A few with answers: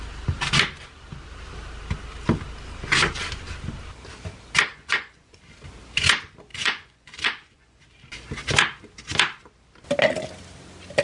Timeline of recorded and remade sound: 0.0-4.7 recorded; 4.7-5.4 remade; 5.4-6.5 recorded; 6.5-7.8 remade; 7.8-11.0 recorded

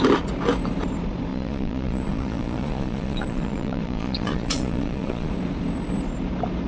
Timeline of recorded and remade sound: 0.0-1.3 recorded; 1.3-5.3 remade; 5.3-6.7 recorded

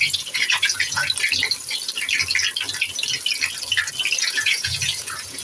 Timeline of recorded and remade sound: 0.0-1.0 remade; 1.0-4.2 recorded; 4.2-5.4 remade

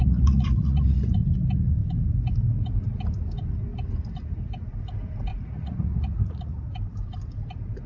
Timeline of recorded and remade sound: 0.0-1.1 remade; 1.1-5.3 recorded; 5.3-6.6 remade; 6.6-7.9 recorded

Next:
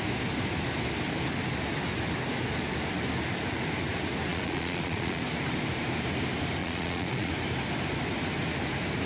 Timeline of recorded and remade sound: 0.0-4.3 recorded; 4.3-5.2 remade; 5.2-6.6 recorded; 6.6-7.3 remade; 7.3-9.1 recorded

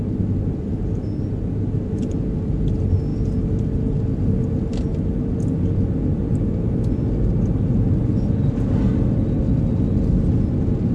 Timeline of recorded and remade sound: 0.0-10.9 recorded